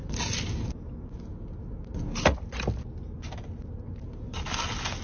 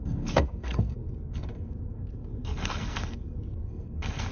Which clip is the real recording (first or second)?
first